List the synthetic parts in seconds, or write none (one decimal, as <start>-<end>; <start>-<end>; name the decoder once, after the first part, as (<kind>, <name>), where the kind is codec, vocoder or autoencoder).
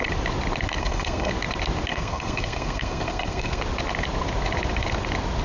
0.8-1.3 (codec, SNAC); 1.9-3.6